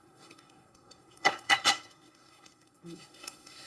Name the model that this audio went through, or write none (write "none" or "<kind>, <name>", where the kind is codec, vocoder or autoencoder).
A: codec, SNAC